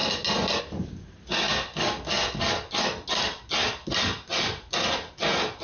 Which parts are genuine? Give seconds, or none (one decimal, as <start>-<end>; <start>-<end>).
0.0-5.6